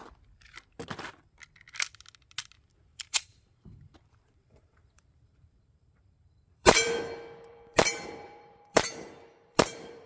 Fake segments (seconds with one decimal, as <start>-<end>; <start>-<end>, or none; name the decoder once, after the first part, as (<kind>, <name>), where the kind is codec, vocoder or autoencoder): 2.9-7.0 (vocoder, BigVGAN v2); 7.5-10.1